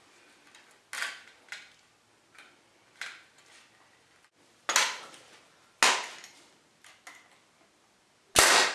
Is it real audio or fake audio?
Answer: real